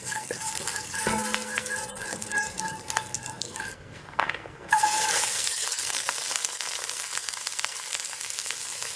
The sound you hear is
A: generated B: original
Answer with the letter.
A